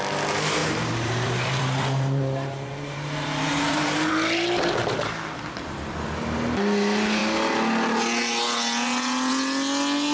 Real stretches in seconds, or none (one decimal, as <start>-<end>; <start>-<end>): 0.0-0.6; 4.1-10.1

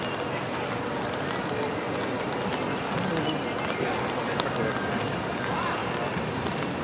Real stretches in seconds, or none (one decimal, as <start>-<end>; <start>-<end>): 0.0-6.8

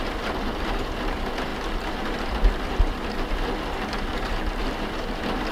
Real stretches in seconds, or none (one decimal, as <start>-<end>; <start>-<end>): 0.0-1.5; 3.3-4.1; 4.6-5.5

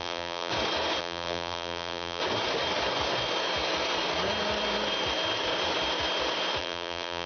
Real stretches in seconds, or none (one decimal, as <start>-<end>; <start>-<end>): 0.5-1.0; 2.2-6.6

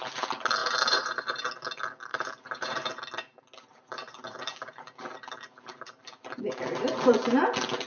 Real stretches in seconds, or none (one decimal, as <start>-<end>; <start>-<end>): 0.0-0.6; 1.5-2.1; 2.9-3.7; 7.1-7.9

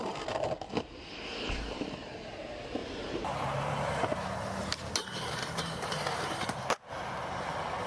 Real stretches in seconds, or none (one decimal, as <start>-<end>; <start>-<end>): 0.0-2.8; 4.1-5.0; 6.7-7.9

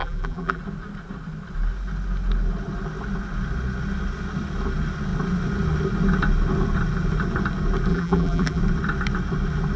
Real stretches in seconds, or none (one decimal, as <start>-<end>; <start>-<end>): 0.6-7.9; 8.6-9.8

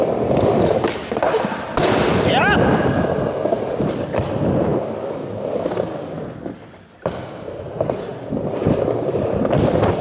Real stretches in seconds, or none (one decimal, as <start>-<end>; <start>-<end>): 2.8-3.8; 4.7-7.6; 8.1-9.6